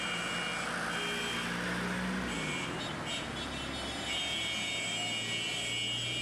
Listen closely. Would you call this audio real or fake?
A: real